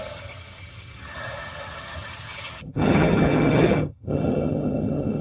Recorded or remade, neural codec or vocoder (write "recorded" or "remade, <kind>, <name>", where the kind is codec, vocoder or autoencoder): remade, vocoder, HiFi-GAN